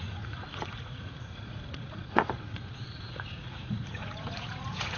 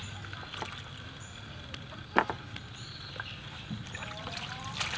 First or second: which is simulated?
first